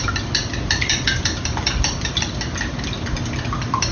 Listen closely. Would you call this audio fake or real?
real